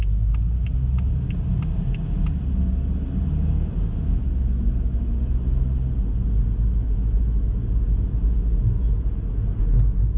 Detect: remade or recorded recorded